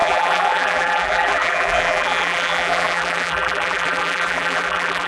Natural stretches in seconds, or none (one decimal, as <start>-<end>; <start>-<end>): none